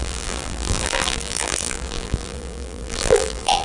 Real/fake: fake